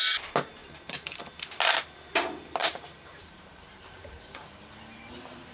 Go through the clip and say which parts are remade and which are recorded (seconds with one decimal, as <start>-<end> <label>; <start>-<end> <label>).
0.0-0.6 recorded; 0.6-1.2 remade; 1.2-2.6 recorded; 2.6-4.8 remade; 4.8-5.5 recorded